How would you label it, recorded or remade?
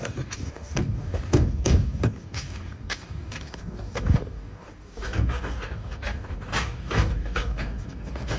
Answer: remade